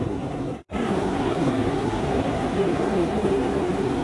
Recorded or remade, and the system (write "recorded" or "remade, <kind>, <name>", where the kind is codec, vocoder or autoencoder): remade, codec, SNAC